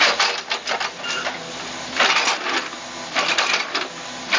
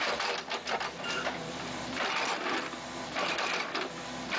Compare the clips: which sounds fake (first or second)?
second